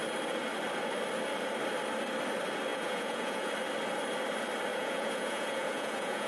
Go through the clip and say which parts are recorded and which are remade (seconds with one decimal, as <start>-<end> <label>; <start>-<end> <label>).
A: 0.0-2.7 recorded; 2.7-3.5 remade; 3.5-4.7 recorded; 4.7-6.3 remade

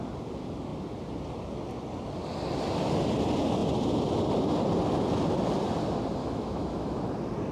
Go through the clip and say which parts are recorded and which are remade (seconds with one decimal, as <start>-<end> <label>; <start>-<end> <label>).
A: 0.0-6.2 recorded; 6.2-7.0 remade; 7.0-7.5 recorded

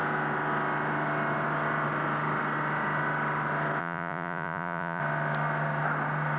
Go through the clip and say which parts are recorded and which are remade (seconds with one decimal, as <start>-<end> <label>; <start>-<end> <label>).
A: 0.0-3.8 recorded; 3.8-5.0 remade; 5.0-6.4 recorded

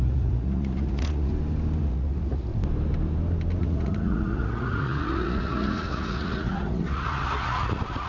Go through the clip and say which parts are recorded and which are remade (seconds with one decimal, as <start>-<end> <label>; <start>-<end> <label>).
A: 0.0-1.3 remade; 1.3-1.8 recorded; 1.8-2.5 remade; 2.5-3.6 recorded; 3.6-8.1 remade

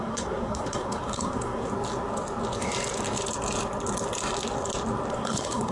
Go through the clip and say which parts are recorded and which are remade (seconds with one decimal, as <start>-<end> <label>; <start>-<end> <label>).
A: 0.0-1.7 remade; 1.7-5.1 recorded; 5.1-5.7 remade

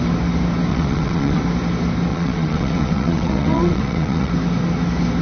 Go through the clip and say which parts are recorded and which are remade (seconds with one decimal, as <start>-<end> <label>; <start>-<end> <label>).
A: 0.0-0.7 recorded; 0.7-1.4 remade; 1.4-2.1 recorded; 2.1-4.3 remade; 4.3-5.2 recorded

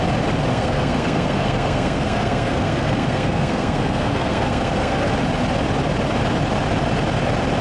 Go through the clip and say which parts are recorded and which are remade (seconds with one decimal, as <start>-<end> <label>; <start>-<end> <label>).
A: 0.0-0.5 recorded; 0.5-5.1 remade; 5.1-7.6 recorded